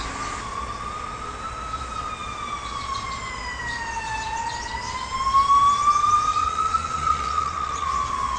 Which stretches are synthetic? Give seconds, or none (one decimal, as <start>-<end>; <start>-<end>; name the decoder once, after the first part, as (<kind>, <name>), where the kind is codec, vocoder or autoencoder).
6.3-7.9 (vocoder, Vocos)